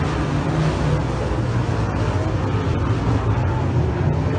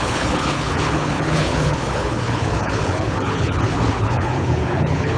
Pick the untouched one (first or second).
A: first